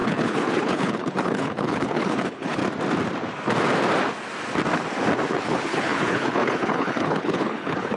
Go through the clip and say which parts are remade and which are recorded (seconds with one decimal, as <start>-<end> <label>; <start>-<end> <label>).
0.0-2.6 remade; 2.6-5.3 recorded; 5.3-8.0 remade